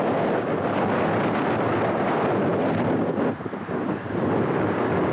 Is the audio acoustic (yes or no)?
yes